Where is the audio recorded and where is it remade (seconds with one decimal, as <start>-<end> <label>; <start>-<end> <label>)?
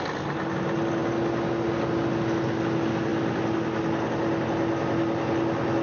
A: 0.0-5.8 recorded